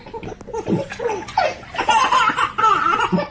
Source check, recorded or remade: recorded